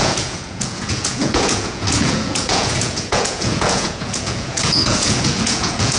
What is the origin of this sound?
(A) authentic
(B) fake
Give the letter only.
B